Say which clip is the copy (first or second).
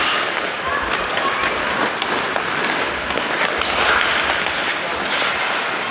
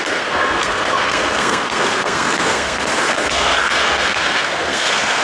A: second